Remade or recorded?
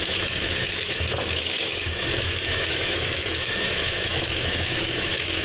remade